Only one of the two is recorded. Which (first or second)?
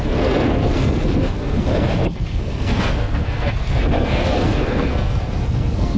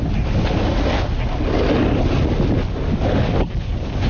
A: second